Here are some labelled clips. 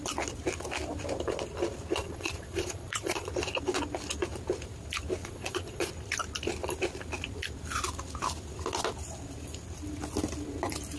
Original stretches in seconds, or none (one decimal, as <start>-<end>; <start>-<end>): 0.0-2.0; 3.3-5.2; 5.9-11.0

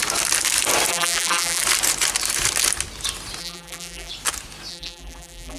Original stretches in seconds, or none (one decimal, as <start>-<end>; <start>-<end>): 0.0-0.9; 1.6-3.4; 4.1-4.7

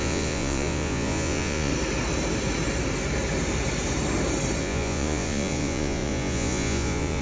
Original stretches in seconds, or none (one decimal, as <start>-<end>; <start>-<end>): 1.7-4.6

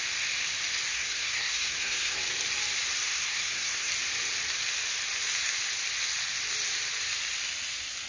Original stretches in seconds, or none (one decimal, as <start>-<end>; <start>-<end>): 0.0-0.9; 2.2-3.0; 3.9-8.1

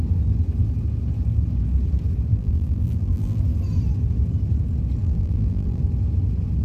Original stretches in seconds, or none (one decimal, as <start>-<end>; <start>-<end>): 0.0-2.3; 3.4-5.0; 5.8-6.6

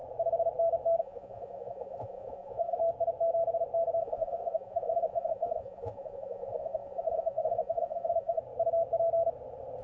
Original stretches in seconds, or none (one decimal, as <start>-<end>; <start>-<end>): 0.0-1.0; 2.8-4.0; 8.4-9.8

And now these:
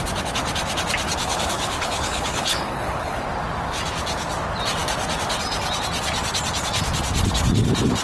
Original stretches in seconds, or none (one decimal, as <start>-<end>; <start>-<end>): 0.0-1.2; 3.2-8.0

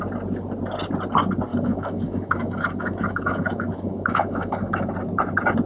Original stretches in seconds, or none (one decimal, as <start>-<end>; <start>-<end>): 0.0-1.5; 4.9-5.7